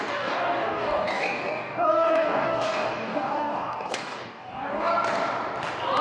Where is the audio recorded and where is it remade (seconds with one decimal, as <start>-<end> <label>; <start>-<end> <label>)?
0.0-4.9 remade; 4.9-6.0 recorded